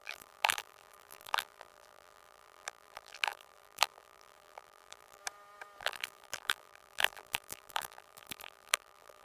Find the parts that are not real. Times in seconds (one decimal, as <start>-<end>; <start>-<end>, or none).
0.0-5.2; 5.8-9.2